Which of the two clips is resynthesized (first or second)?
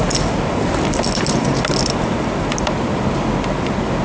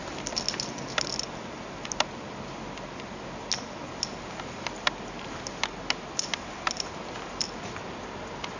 first